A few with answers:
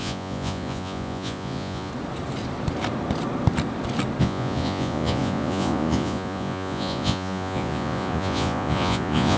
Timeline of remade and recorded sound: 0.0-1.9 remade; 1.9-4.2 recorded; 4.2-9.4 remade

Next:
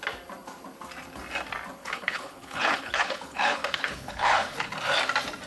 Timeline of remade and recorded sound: 0.0-1.8 recorded; 1.8-4.7 remade; 4.7-5.5 recorded

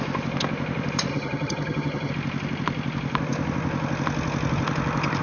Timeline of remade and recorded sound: 0.0-1.1 recorded; 1.1-2.1 remade; 2.1-5.2 recorded